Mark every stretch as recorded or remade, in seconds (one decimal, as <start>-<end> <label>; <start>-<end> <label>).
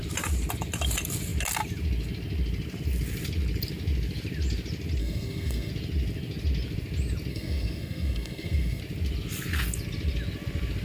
0.0-5.0 recorded; 5.0-5.7 remade; 5.7-7.3 recorded; 7.3-8.8 remade; 8.8-10.8 recorded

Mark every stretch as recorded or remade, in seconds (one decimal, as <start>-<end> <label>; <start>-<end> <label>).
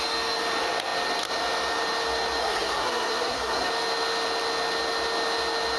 0.0-2.4 recorded; 2.4-3.7 remade; 3.7-5.8 recorded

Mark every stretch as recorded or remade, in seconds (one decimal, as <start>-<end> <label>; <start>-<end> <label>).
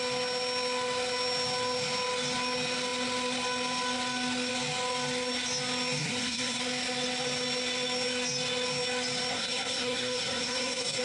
0.0-6.0 recorded; 6.0-6.6 remade; 6.6-9.3 recorded; 9.3-11.0 remade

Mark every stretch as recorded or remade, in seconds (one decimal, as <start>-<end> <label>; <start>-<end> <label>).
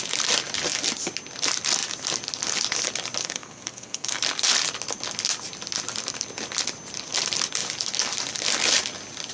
0.0-3.2 recorded; 3.2-4.2 remade; 4.2-9.3 recorded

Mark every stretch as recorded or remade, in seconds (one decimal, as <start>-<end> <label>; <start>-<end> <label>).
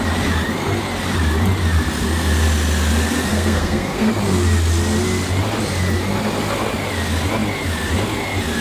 0.0-3.3 recorded; 3.3-4.1 remade; 4.1-8.6 recorded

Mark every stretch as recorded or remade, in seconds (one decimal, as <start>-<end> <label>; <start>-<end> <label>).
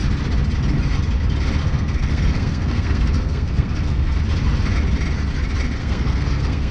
0.0-1.6 recorded; 1.6-4.2 remade; 4.2-5.8 recorded; 5.8-6.7 remade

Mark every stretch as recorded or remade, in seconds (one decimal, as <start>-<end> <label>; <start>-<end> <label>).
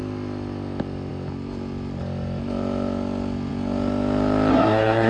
0.0-4.5 recorded; 4.5-5.1 remade